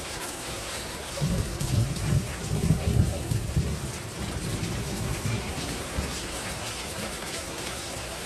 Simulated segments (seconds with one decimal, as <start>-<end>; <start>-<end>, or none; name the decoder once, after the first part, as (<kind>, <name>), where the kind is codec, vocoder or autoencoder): 0.0-3.8 (codec, SNAC); 4.8-8.3